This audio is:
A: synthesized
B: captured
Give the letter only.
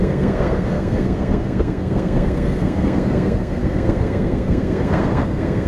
A